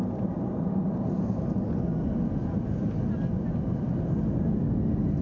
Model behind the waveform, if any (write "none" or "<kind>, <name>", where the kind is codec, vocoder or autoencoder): none